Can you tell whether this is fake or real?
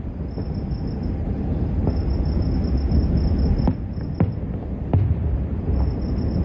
real